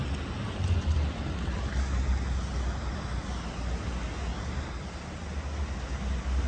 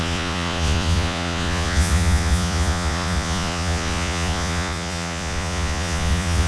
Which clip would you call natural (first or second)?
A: first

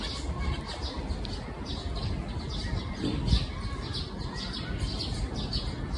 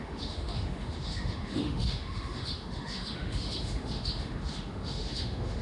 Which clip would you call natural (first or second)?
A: first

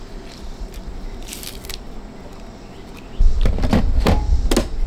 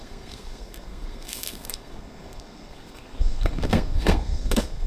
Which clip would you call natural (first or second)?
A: first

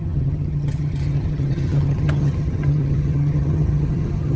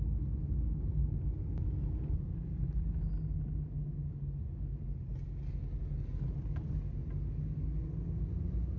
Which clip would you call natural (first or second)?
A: second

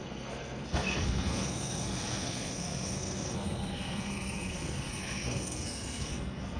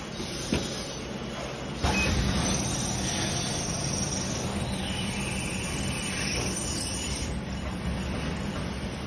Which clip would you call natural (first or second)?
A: second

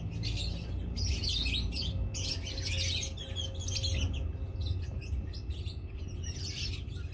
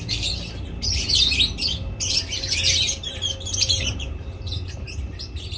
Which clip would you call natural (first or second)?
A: first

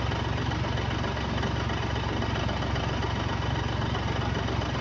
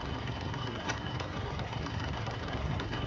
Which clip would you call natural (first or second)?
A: first